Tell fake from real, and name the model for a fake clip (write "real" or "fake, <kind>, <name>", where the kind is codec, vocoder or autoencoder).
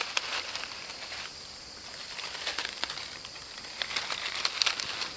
fake, vocoder, BigVGAN v2